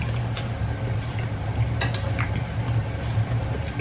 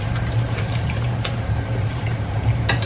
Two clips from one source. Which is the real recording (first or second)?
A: first